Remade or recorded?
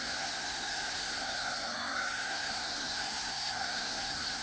remade